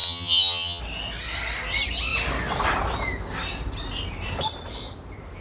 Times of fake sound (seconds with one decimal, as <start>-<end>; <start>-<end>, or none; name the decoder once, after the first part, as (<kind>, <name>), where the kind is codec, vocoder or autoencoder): 0.0-0.8 (vocoder, HiFi-GAN)